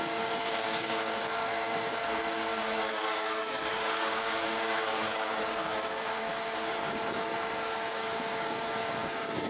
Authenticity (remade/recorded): remade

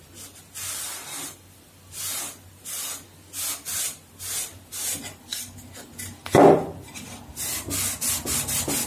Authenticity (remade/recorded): recorded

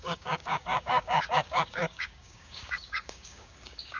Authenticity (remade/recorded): remade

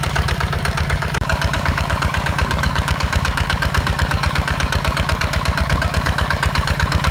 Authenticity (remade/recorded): remade